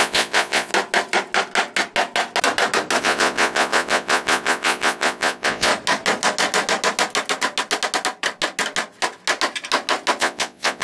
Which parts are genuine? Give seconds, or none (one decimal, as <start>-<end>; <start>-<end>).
0.7-3.0; 5.7-10.2